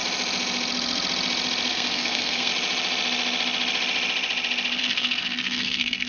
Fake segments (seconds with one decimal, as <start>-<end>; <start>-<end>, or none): 1.7-2.5; 4.8-6.1